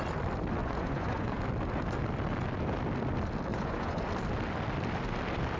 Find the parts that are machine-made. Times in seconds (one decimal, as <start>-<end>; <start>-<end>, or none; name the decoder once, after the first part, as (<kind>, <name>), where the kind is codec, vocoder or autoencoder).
0.6-1.4 (vocoder, Vocos); 3.5-4.1